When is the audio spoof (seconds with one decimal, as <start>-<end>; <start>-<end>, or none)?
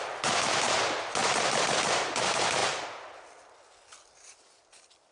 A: none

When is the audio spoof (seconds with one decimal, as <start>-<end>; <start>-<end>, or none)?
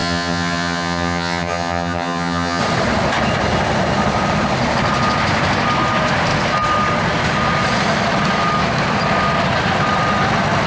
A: 0.0-2.6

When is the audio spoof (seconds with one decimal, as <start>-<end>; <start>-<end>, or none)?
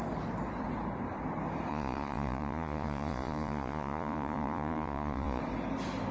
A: 1.7-5.4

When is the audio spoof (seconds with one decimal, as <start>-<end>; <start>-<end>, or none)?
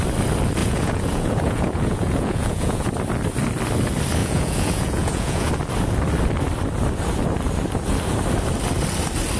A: 0.6-2.9; 4.2-5.5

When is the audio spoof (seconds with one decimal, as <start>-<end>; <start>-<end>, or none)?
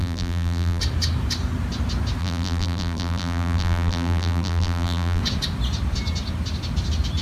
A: 0.0-0.8; 2.2-5.2